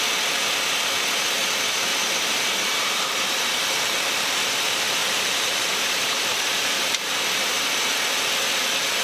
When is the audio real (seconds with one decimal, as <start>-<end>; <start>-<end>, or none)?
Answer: 0.0-1.9; 3.6-5.0; 7.6-9.0